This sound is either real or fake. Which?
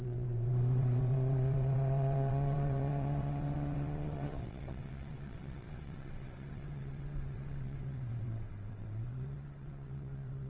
fake